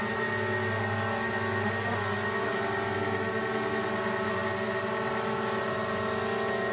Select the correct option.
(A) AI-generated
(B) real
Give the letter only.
B